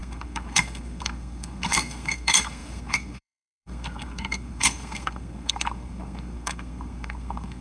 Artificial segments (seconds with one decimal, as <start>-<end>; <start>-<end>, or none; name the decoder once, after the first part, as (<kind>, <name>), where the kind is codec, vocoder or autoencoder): 0.0-7.6 (codec, SNAC)